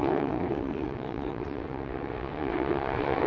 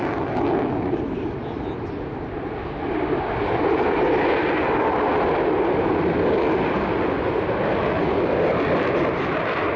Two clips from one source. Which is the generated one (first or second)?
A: first